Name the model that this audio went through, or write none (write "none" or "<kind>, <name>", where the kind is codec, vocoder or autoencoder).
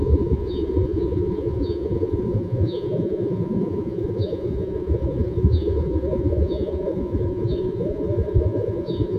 vocoder, Vocos